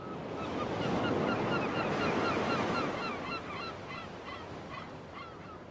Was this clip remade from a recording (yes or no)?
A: no